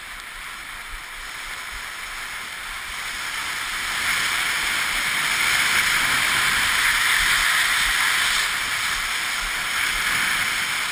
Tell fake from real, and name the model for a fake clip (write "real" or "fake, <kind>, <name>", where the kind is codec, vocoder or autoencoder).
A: real